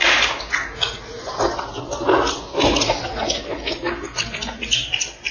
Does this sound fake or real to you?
real